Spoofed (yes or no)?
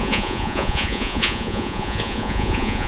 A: yes